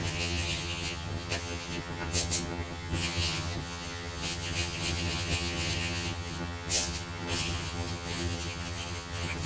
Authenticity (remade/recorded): remade